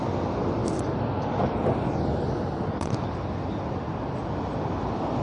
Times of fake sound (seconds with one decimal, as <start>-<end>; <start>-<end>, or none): none